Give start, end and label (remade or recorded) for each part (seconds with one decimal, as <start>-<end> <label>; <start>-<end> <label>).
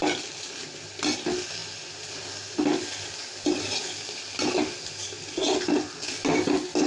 0.0-6.9 recorded